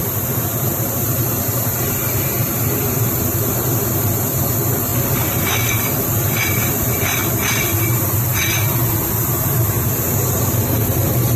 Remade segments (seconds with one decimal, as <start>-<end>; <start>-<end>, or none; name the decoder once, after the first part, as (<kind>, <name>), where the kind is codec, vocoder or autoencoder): 0.0-7.2 (vocoder, BigVGAN v2); 10.3-11.4